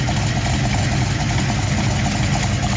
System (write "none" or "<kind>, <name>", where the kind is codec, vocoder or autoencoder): none